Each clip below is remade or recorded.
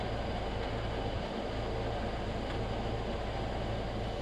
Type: recorded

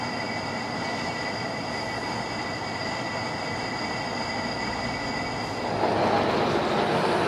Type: recorded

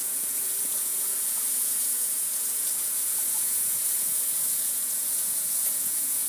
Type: remade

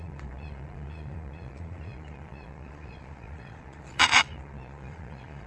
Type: remade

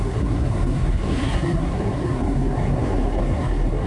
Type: remade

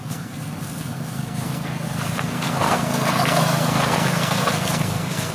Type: remade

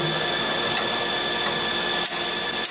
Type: recorded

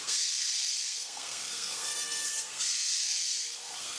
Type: remade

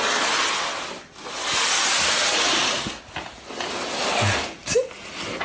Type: recorded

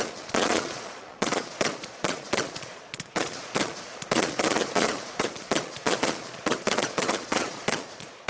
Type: remade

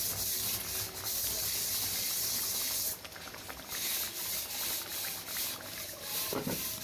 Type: recorded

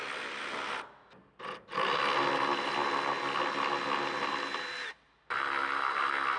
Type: recorded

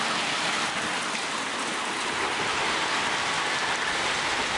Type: recorded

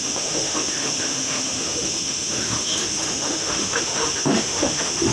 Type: remade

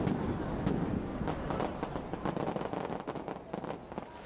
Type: recorded